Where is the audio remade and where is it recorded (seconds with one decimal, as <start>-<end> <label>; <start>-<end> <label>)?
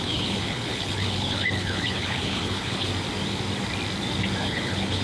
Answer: 0.0-2.9 remade; 2.9-4.4 recorded; 4.4-5.0 remade